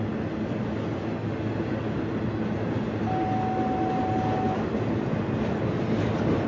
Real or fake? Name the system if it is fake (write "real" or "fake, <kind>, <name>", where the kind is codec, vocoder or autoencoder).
real